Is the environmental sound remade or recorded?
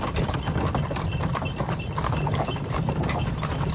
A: recorded